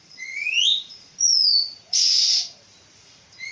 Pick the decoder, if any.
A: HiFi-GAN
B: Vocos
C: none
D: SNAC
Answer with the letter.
B